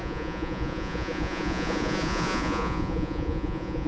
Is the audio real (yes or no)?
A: no